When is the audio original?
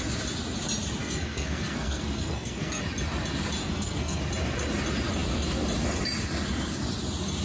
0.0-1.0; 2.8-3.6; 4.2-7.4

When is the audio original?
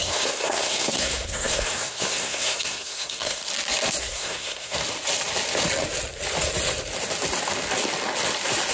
3.4-4.0; 4.8-8.7